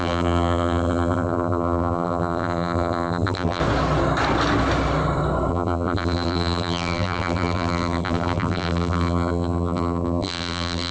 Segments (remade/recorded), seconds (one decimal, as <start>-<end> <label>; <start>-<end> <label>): 0.0-3.6 remade; 3.6-5.5 recorded; 5.5-10.9 remade